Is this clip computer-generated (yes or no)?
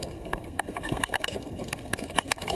yes